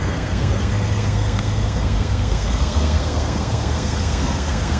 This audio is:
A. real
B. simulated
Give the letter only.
B